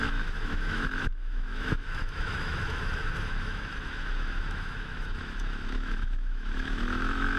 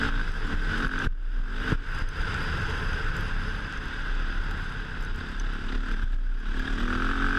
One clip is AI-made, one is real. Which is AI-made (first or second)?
first